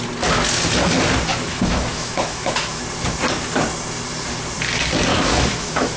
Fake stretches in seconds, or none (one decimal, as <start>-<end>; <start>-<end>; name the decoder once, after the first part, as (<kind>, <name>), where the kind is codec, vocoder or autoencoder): 1.3-2.8 (autoencoder, DAC-VAE); 5.1-6.0